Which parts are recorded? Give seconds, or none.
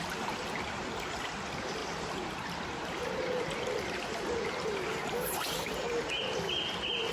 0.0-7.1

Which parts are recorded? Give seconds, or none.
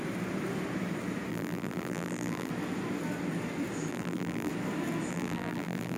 0.0-1.3; 2.5-3.9; 4.5-5.1